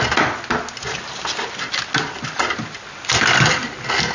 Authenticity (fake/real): real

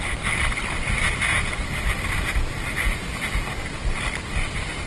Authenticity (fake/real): real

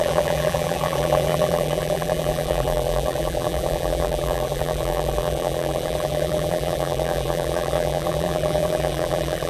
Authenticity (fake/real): fake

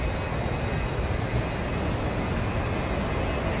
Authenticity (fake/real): real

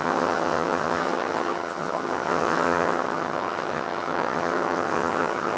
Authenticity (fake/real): fake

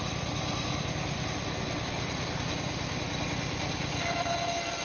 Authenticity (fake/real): real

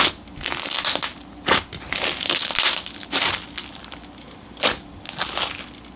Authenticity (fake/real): real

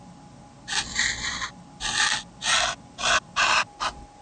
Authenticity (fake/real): real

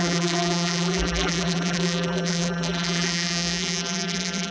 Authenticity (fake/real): fake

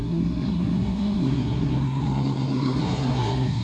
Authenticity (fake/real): fake